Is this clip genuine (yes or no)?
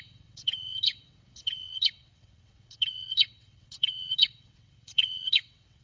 no